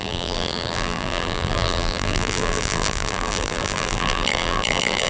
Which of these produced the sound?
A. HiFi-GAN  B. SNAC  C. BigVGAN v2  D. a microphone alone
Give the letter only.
C